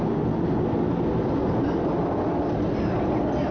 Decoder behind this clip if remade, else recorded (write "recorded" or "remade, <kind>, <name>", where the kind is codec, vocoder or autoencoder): recorded